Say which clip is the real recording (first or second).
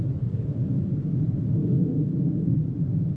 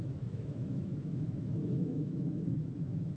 first